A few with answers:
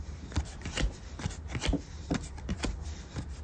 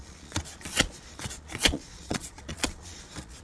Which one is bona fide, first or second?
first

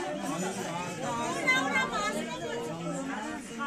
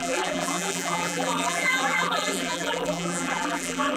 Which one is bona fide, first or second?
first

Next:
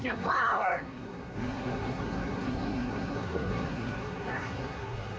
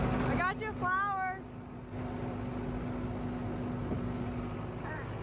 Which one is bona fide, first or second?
second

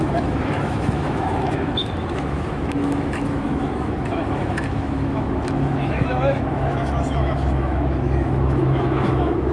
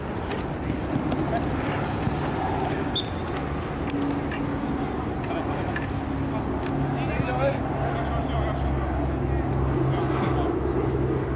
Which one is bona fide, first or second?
second